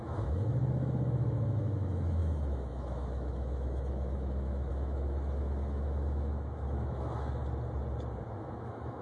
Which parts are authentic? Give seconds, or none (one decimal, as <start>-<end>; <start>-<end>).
7.4-8.4